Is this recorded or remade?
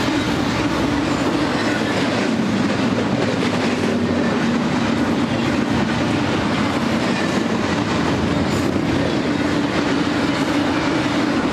recorded